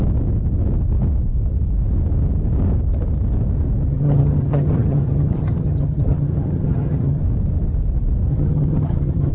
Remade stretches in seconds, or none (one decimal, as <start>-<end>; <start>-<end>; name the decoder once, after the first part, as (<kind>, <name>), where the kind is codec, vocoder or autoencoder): 3.9-7.2 (vocoder, HiFi-GAN); 8.3-9.3